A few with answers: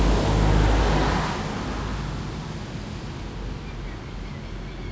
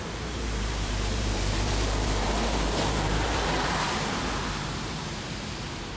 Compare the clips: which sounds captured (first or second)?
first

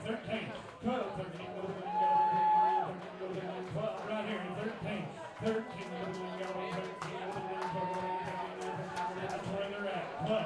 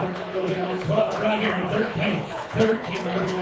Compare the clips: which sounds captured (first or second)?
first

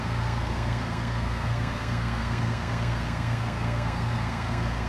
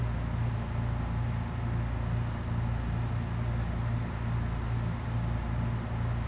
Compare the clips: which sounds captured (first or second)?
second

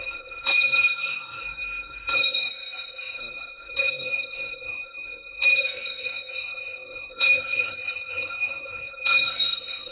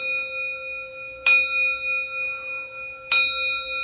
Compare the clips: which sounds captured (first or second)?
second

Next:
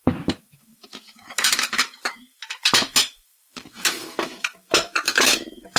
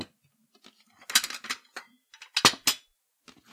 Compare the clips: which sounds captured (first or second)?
second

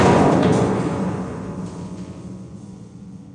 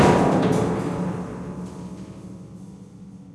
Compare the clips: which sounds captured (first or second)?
second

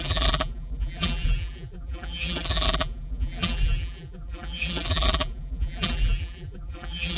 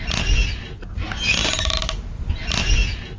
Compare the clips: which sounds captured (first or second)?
second